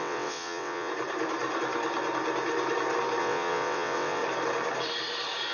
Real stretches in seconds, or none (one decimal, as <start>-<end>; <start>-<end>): 0.9-3.2; 4.2-5.5